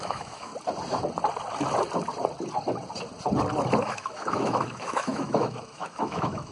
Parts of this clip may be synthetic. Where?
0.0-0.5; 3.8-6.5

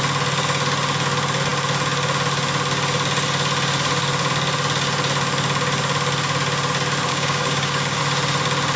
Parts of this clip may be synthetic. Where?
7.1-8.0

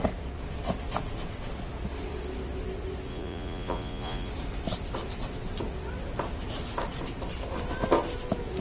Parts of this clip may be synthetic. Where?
3.1-4.3